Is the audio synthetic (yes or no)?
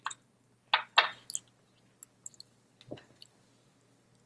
no